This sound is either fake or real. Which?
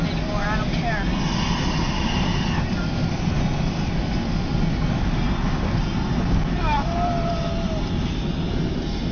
real